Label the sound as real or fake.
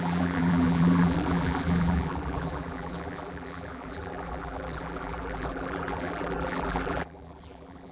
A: fake